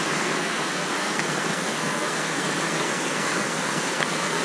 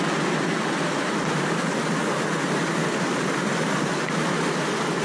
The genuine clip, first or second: second